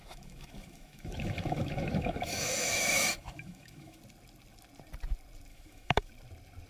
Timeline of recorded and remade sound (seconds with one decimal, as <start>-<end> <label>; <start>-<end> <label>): 0.0-4.0 remade; 4.0-5.5 recorded; 5.5-6.1 remade; 6.1-6.7 recorded